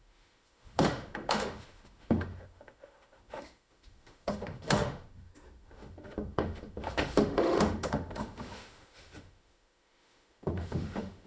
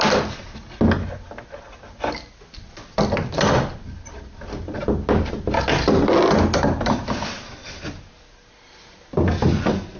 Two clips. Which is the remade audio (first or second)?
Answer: first